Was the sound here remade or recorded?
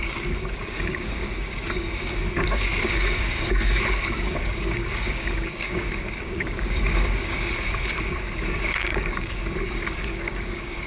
remade